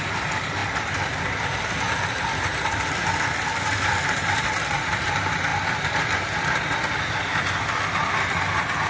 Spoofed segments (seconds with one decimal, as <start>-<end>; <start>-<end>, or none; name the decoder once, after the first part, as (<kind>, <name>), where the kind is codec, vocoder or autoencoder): 0.6-5.1 (vocoder, BigVGAN v2)